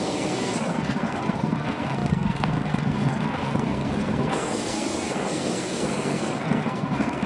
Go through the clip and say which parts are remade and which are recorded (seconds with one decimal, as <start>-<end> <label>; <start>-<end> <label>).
0.0-7.3 remade